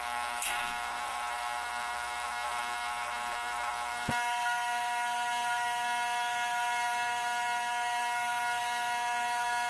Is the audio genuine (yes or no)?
no